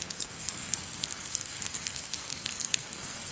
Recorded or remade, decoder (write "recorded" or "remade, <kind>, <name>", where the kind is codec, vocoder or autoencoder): remade, codec, SNAC